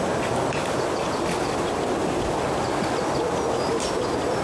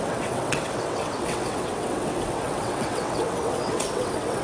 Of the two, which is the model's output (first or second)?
second